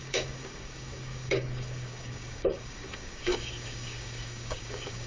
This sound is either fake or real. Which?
fake